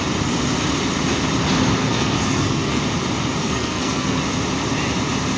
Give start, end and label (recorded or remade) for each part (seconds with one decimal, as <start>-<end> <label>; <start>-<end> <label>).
0.0-1.8 recorded; 1.8-2.8 remade; 2.8-3.4 recorded; 3.4-4.2 remade; 4.2-5.4 recorded